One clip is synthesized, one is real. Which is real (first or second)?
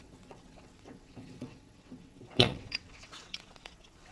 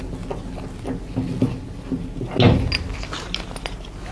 second